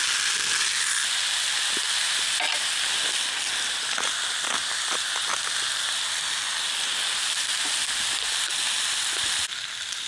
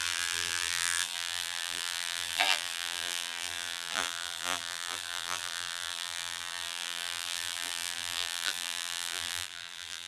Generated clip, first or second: second